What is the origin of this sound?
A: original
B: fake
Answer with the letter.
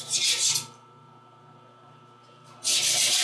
B